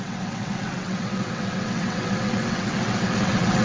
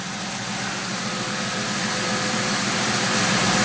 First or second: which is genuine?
second